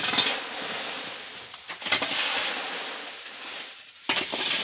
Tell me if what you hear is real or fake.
real